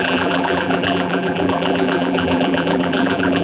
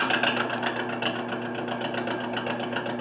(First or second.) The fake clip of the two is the first